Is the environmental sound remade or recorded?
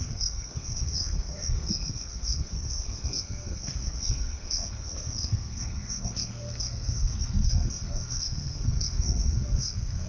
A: remade